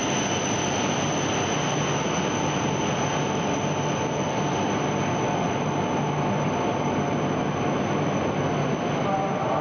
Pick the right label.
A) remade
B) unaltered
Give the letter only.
B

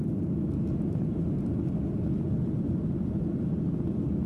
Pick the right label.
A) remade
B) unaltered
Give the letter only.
B